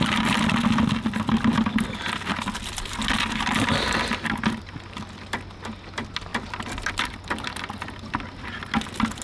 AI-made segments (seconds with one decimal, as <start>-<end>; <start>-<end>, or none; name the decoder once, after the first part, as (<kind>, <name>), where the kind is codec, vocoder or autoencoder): none